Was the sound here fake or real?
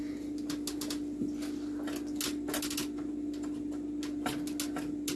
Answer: real